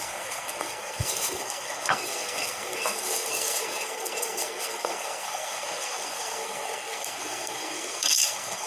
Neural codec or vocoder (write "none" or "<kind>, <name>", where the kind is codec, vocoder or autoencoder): codec, SNAC